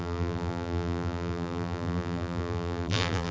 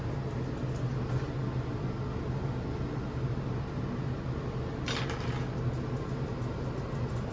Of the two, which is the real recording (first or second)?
second